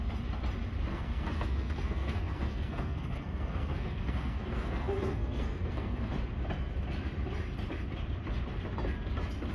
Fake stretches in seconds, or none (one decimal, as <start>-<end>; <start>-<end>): 0.9-6.1